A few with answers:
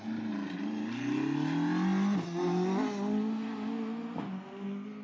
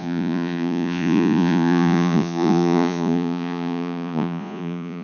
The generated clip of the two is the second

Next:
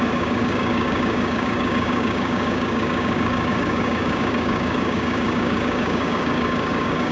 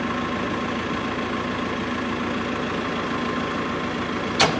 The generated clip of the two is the first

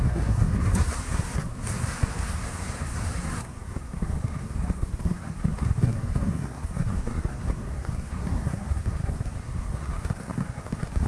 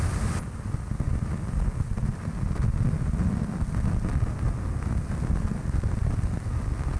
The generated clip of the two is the first